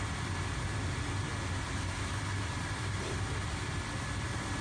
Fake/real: real